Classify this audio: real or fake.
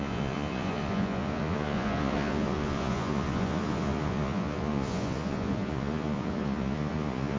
fake